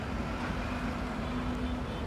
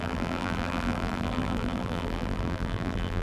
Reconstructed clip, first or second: second